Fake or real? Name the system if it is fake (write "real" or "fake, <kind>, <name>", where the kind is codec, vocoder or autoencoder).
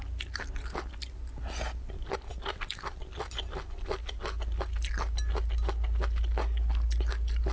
real